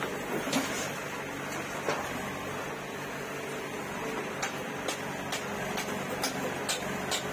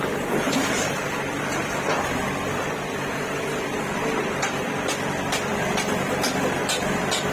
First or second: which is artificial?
second